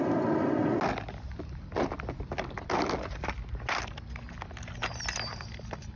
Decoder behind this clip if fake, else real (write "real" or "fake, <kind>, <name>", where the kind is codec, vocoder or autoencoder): real